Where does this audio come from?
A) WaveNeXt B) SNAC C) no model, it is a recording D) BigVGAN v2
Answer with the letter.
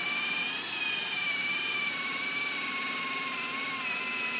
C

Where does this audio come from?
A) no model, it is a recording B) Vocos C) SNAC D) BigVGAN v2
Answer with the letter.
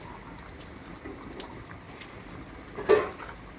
D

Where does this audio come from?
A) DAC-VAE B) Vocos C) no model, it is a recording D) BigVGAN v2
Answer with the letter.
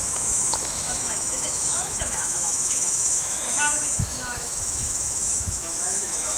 A